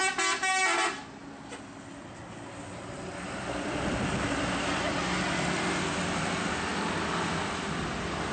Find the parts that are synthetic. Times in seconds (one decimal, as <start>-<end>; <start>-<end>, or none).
none